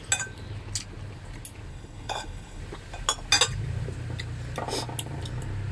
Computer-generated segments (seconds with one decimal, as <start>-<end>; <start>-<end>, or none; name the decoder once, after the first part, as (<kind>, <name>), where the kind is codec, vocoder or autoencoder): 1.7-2.6 (codec, HILCodec)